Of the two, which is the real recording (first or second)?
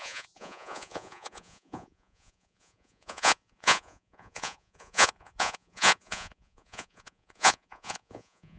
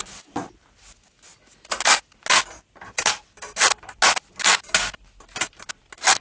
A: second